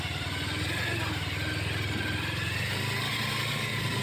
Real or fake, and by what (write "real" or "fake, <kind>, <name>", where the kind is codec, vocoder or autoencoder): real